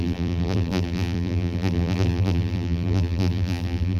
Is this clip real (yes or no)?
no